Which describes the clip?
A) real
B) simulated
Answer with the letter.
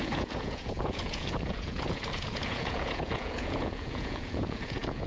B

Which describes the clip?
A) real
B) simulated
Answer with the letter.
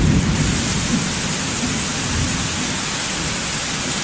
A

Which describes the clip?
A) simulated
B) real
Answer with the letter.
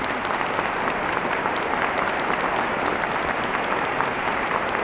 B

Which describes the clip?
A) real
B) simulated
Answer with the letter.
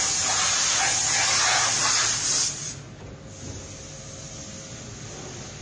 A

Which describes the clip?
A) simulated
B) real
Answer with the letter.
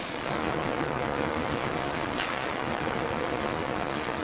A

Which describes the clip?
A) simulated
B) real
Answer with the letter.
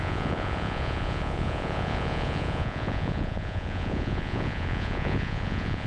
A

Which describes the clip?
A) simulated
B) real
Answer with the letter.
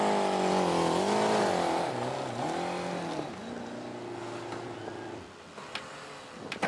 B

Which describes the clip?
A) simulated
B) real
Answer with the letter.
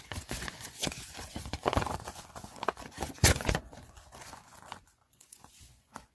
A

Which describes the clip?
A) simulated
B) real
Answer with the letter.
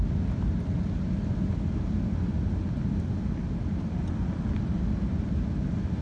B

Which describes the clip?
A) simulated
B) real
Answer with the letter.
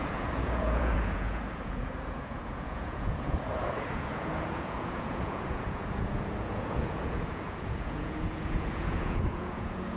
A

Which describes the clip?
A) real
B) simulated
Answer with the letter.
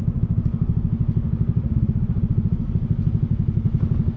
A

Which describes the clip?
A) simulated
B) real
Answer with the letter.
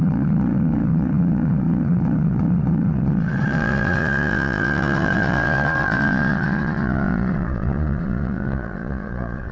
A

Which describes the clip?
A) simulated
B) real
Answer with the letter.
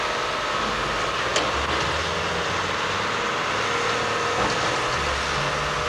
B